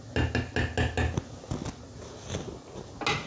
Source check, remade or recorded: recorded